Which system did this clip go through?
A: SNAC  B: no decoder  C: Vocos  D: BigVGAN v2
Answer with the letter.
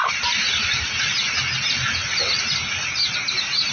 B